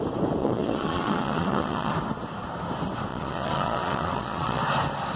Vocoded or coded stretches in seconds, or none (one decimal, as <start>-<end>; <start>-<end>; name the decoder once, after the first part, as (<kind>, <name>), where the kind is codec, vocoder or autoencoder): 0.4-1.9 (vocoder, Vocos); 3.1-4.6